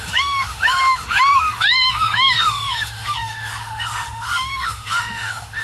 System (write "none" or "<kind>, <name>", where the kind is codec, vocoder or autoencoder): autoencoder, DAC-VAE